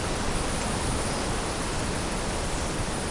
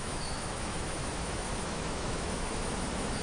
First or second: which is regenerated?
second